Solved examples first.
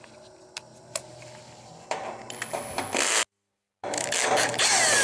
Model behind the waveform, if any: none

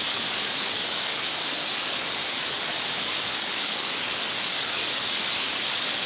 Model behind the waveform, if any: codec, DAC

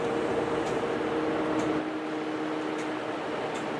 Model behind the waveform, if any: none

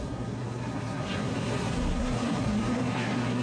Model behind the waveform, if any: codec, SNAC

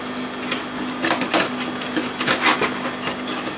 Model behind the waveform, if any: none